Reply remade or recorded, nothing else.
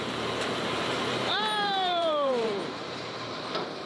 remade